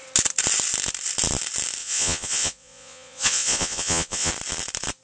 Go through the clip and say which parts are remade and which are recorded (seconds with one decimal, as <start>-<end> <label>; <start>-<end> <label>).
0.0-1.8 recorded; 1.8-4.3 remade; 4.3-5.0 recorded